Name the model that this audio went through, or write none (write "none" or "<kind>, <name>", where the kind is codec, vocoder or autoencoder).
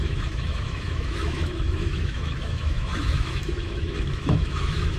autoencoder, DAC-VAE